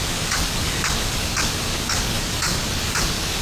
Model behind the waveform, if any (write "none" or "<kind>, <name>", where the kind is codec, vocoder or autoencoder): codec, DAC